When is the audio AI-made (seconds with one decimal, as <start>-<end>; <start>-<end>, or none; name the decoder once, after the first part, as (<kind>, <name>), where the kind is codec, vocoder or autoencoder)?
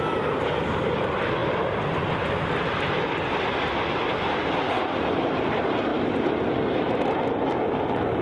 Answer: none